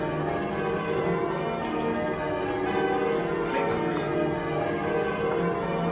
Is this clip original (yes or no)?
yes